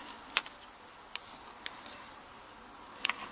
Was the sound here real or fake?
real